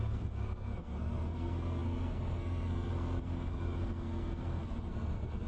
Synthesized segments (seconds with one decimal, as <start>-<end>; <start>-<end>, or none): 0.0-5.5